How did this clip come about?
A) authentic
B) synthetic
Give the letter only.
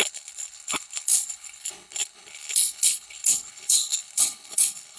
B